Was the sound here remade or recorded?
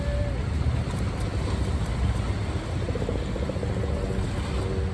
recorded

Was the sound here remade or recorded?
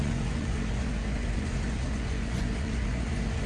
remade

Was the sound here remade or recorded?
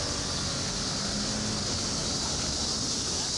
recorded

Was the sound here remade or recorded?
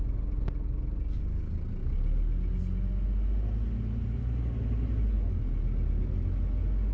recorded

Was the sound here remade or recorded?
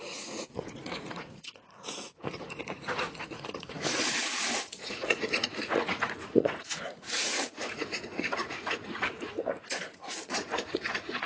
remade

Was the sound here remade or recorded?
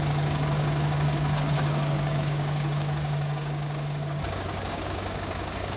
remade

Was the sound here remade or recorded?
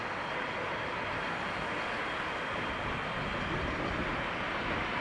recorded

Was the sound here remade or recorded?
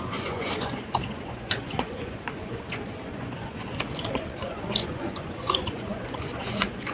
remade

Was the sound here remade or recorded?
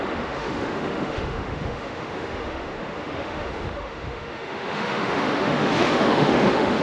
remade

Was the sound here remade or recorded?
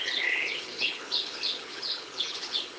remade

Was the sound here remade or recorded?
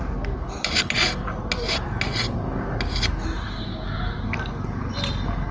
recorded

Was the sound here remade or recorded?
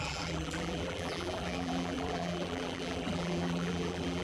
remade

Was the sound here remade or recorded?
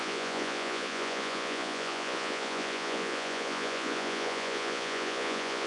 remade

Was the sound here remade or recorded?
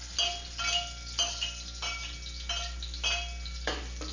recorded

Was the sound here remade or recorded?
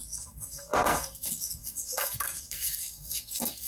remade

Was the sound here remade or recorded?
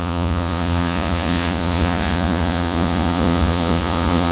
remade